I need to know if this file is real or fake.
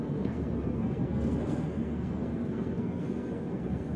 fake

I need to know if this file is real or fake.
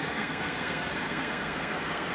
fake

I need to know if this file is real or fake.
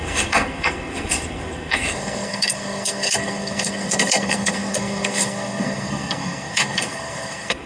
fake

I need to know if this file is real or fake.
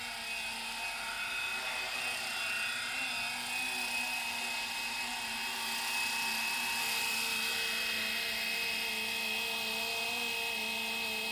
real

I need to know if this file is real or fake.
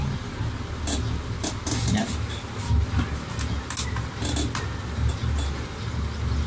real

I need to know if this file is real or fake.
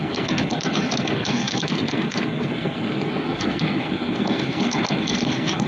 fake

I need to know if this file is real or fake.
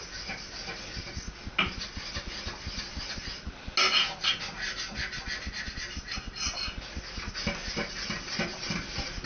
real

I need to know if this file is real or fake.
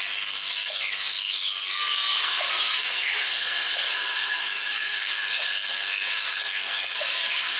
fake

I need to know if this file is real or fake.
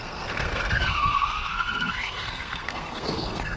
fake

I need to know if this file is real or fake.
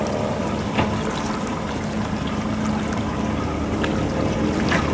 real